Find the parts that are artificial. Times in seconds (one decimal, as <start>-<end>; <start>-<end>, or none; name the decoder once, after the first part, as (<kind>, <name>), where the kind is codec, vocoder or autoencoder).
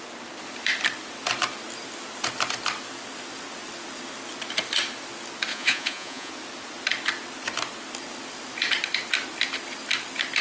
5.5-6.3 (vocoder, Vocos)